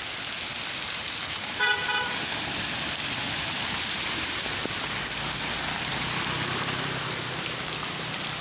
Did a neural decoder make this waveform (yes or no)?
yes